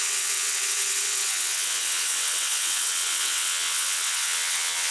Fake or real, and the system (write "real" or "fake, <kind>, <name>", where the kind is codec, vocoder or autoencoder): fake, vocoder, WaveNeXt